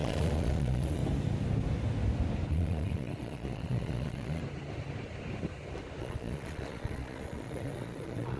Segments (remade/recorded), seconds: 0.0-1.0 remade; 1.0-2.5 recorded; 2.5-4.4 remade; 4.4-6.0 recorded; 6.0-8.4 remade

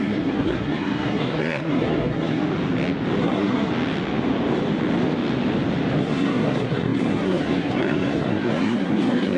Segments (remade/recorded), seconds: 0.0-2.4 remade; 2.4-3.2 recorded; 3.2-3.7 remade; 3.7-6.0 recorded; 6.0-9.4 remade

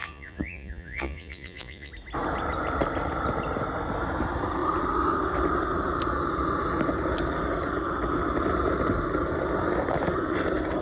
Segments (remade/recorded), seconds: 0.0-1.9 remade; 1.9-10.8 recorded

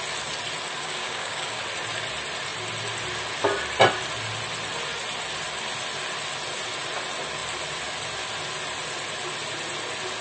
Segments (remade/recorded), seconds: 0.0-0.8 recorded; 0.8-1.6 remade; 1.6-10.2 recorded

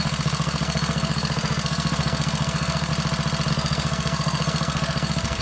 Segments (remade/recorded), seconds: 0.0-2.9 remade; 2.9-3.5 recorded; 3.5-5.4 remade

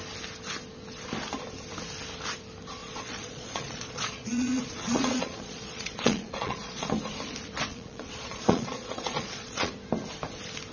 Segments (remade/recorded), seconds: 0.0-2.8 recorded; 2.8-6.9 remade; 6.9-7.7 recorded; 7.7-9.7 remade; 9.7-10.7 recorded